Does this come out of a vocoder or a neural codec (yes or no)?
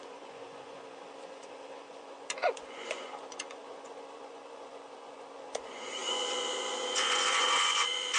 yes